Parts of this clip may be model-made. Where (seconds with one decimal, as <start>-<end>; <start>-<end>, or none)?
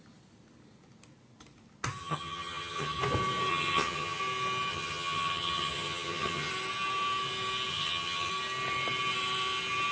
2.0-3.0; 3.5-4.2; 4.7-6.5; 7.7-8.3